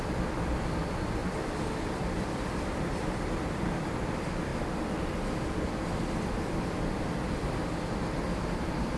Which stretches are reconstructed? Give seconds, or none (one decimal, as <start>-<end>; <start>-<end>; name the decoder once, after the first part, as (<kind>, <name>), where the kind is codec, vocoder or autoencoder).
0.0-4.5 (vocoder, BigVGAN v2); 6.2-9.0